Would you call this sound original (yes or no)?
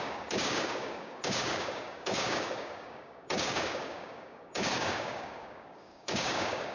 no